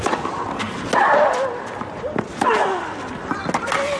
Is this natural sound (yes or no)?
yes